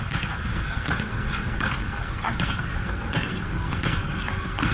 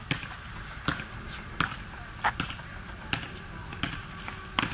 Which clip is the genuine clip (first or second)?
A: second